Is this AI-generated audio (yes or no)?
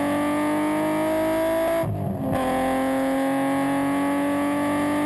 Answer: no